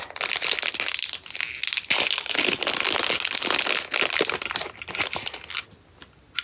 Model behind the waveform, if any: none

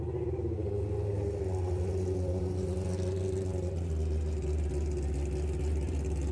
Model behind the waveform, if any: none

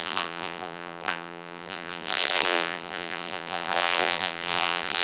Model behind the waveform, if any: vocoder, BigVGAN v2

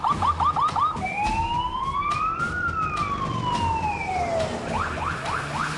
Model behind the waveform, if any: none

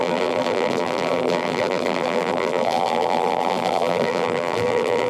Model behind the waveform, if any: vocoder, BigVGAN v2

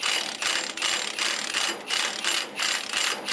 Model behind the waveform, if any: none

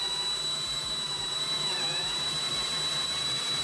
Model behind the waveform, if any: vocoder, BigVGAN v2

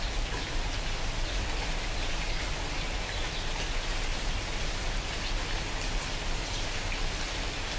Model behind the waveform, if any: none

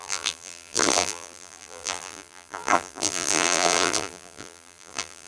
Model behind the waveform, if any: vocoder, BigVGAN v2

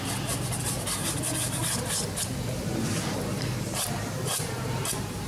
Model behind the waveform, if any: vocoder, BigVGAN v2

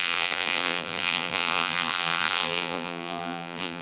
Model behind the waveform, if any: vocoder, BigVGAN v2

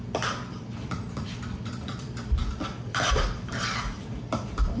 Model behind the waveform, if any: vocoder, BigVGAN v2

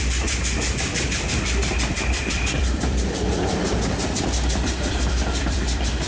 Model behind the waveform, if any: vocoder, BigVGAN v2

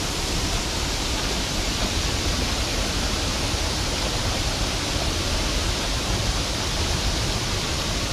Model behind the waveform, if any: none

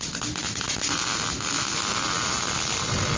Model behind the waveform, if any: none